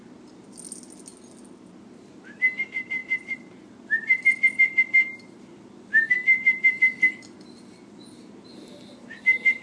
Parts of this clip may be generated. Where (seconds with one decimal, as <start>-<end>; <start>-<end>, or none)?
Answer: 0.0-1.1; 2.6-9.6